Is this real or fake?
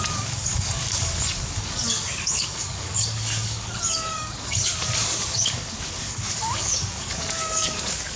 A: fake